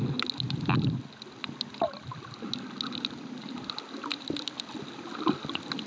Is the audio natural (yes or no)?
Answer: yes